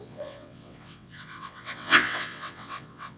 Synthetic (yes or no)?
yes